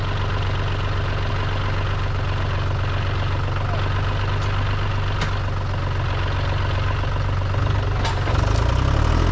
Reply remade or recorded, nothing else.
recorded